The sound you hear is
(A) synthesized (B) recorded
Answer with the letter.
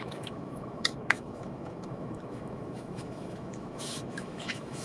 A